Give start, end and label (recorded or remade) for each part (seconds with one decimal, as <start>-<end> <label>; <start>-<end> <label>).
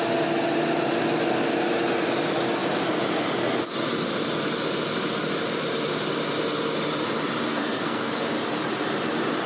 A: 0.0-7.5 recorded; 7.5-8.1 remade; 8.1-9.5 recorded